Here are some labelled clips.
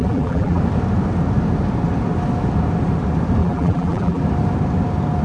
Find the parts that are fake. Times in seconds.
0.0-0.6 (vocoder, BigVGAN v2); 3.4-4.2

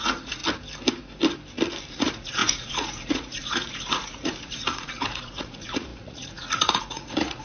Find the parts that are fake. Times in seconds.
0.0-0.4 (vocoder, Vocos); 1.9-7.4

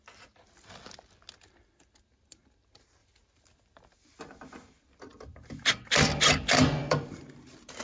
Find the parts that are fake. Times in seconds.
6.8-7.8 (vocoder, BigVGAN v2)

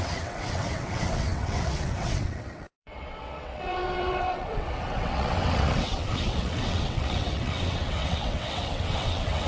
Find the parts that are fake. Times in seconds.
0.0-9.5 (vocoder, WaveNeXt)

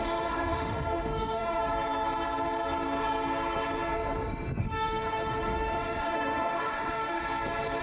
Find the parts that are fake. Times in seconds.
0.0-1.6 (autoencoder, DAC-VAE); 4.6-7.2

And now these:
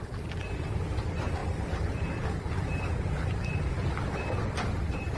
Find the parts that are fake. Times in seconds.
none

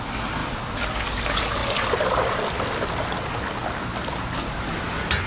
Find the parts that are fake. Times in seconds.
none